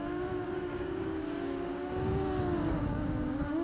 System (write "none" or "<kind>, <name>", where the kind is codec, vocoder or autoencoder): codec, DAC